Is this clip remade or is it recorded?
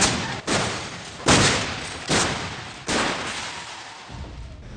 recorded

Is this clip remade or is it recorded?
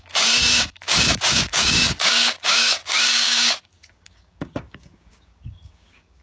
remade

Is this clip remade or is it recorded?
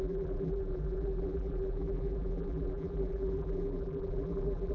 remade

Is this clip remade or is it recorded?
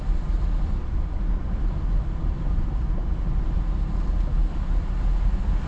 recorded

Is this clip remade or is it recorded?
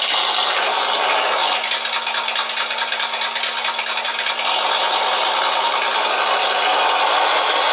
recorded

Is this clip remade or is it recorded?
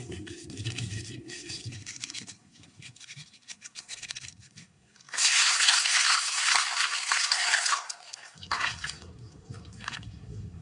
remade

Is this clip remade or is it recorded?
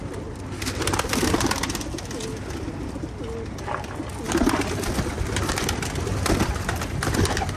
recorded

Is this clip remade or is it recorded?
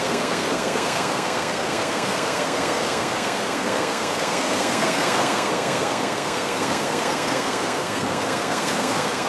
remade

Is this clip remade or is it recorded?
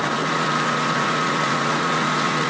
remade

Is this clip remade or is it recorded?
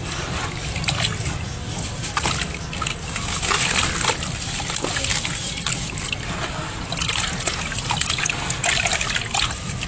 recorded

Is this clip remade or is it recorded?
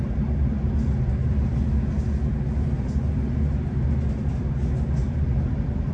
recorded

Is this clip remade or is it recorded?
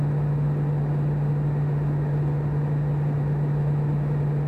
recorded